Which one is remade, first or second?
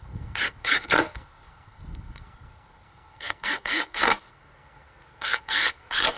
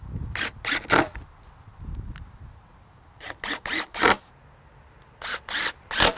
first